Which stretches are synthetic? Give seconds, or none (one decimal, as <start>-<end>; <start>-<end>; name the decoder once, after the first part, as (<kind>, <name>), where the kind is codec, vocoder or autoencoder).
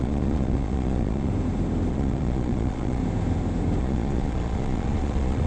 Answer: 0.0-1.3 (vocoder, Vocos); 1.9-3.0; 3.8-5.5